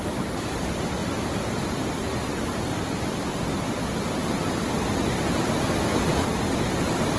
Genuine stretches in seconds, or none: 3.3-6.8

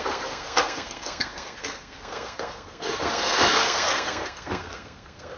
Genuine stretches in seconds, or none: none